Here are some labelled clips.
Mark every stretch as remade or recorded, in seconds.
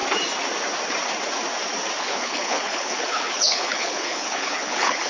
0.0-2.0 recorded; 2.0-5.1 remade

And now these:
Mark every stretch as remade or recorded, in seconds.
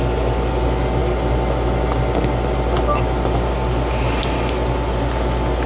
0.0-5.7 recorded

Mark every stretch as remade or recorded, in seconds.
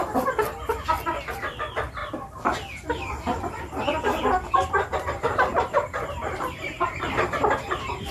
0.0-4.9 recorded; 4.9-8.1 remade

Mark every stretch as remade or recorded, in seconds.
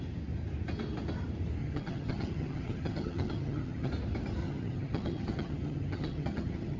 0.0-1.6 recorded; 1.6-3.9 remade; 3.9-4.4 recorded; 4.4-6.8 remade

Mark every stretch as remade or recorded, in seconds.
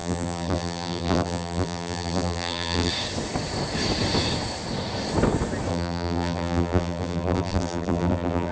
0.0-2.9 remade; 2.9-5.7 recorded; 5.7-8.5 remade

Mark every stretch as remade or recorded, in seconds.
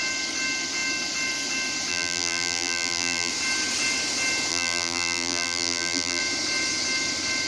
0.0-1.9 recorded; 1.9-3.3 remade; 3.3-4.5 recorded; 4.5-6.2 remade; 6.2-7.5 recorded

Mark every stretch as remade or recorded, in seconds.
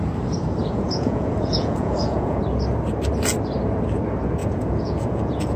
0.0-0.6 recorded; 0.6-2.4 remade; 2.4-4.4 recorded; 4.4-5.6 remade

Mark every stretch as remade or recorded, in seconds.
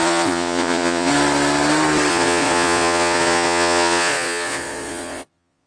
0.0-1.1 remade; 1.1-2.1 recorded; 2.1-5.7 remade